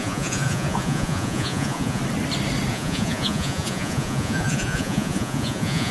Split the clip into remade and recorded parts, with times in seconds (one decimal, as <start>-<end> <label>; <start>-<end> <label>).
0.0-2.0 remade; 2.0-2.7 recorded; 2.7-5.9 remade